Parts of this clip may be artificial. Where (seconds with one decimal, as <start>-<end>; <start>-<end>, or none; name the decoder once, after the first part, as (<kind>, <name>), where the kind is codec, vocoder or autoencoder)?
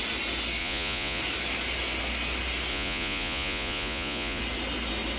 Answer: 0.6-1.2 (vocoder, Vocos); 2.7-4.4